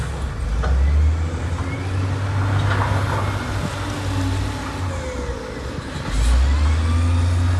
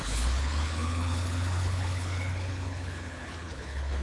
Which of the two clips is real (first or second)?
first